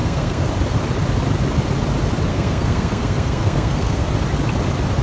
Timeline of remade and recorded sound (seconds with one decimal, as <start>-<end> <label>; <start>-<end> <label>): 0.0-0.5 remade; 0.5-2.3 recorded; 2.3-4.1 remade; 4.1-5.0 recorded